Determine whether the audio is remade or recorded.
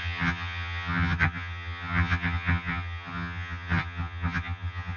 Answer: remade